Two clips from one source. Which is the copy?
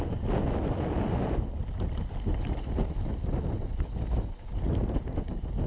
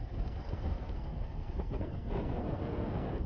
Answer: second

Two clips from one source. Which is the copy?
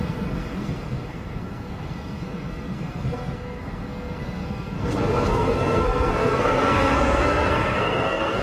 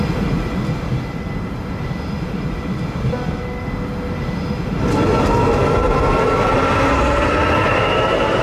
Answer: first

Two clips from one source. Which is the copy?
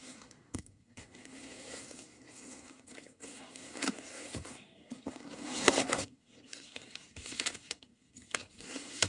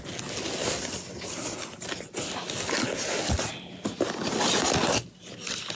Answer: first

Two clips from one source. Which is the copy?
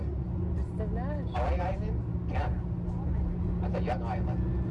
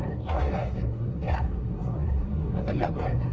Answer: second